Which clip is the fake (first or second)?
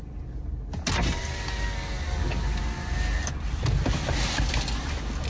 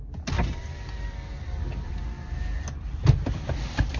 second